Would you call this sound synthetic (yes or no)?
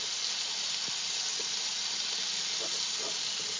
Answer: no